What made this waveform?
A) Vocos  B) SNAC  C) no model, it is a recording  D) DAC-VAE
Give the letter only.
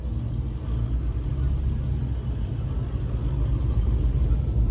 C